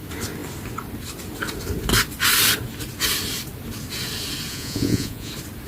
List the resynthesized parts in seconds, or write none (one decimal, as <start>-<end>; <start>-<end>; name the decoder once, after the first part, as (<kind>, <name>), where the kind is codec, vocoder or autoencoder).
4.5-5.3 (vocoder, Vocos)